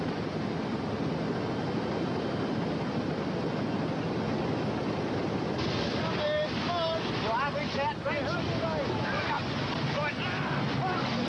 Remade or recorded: recorded